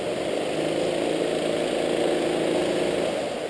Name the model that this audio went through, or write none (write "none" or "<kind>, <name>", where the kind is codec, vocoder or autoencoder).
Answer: none